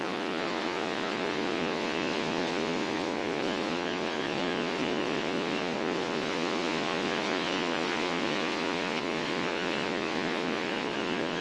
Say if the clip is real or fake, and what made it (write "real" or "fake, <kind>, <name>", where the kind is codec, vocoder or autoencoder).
fake, vocoder, Vocos